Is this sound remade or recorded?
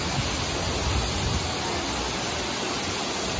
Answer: recorded